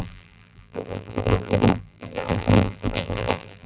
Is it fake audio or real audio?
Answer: fake